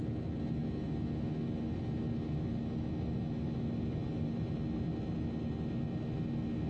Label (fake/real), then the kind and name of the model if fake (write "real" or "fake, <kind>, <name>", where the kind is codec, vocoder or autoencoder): real